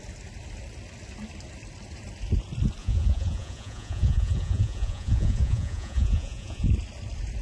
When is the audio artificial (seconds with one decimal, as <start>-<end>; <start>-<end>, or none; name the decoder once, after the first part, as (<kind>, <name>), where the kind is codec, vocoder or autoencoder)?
2.8-6.7 (vocoder, Vocos)